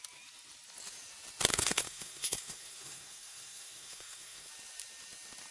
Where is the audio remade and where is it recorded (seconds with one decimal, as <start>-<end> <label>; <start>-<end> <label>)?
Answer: 0.0-1.5 recorded; 1.5-4.5 remade; 4.5-5.5 recorded